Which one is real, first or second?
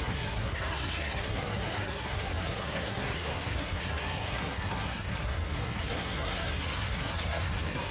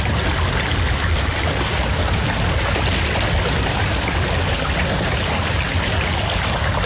second